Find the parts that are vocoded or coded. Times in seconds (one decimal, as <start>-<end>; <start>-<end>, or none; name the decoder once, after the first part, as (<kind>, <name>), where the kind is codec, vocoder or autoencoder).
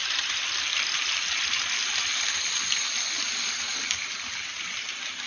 none